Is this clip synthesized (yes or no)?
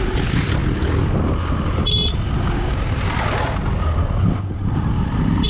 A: no